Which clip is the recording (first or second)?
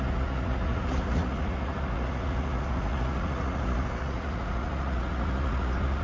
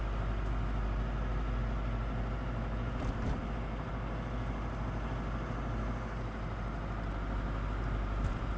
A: second